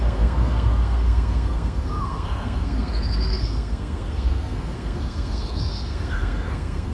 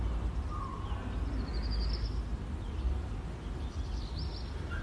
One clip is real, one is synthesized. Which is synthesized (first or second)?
first